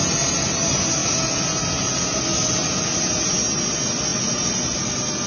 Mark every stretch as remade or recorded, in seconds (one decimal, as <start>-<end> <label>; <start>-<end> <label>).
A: 0.0-5.3 recorded